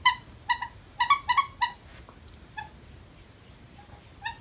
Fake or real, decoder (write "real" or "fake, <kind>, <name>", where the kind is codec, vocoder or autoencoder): real